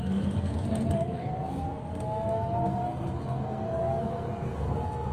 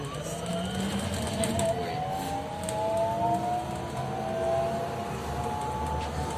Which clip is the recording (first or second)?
second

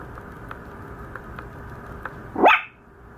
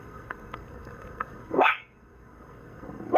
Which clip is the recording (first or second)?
first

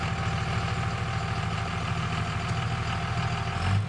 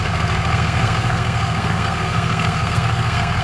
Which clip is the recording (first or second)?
first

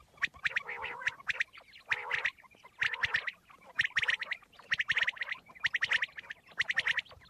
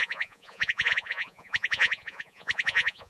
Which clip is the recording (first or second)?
first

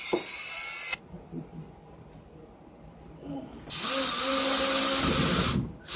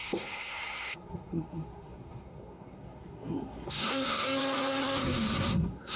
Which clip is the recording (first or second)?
first